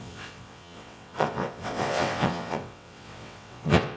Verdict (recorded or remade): remade